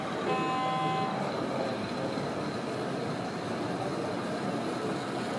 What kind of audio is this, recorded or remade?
recorded